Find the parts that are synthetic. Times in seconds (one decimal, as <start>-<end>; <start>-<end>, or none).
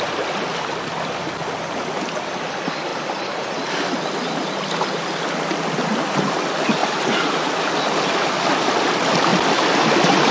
2.9-3.5; 6.8-7.7